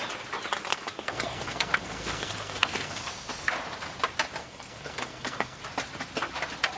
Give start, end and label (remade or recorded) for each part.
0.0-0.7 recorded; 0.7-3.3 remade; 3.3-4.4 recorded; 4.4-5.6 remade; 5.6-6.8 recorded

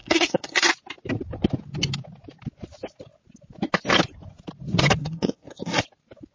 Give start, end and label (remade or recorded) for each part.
0.0-0.7 remade; 0.7-5.0 recorded; 5.0-5.8 remade; 5.8-6.3 recorded